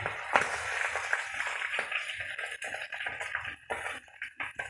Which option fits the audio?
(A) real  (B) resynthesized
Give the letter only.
A